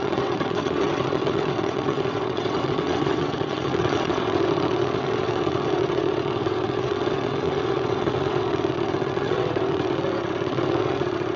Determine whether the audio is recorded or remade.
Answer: remade